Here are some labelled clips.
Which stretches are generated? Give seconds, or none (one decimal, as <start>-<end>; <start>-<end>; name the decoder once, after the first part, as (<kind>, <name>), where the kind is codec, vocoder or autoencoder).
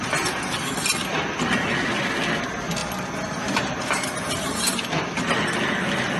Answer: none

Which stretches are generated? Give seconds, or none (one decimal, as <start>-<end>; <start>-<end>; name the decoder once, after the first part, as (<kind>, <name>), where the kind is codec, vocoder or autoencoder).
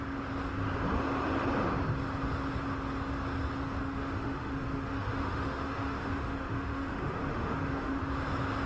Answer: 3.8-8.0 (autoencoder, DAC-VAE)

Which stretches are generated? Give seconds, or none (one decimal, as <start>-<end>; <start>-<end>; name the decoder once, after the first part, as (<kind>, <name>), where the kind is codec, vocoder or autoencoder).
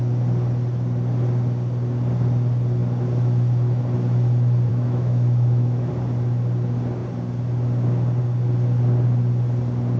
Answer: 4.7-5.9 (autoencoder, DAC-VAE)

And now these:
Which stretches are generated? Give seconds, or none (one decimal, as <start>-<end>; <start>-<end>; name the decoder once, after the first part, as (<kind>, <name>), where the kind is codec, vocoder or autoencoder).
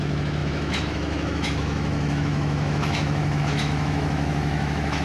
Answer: 0.0-5.0 (autoencoder, DAC-VAE)